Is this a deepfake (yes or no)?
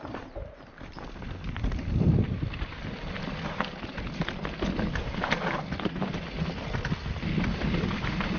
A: no